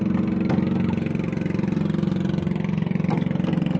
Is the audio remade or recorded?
recorded